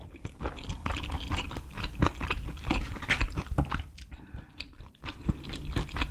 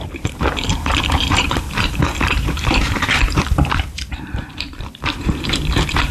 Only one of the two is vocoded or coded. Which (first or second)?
second